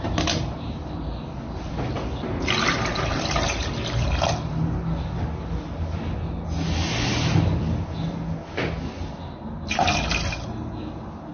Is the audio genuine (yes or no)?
yes